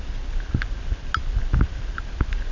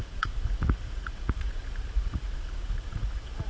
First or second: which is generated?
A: second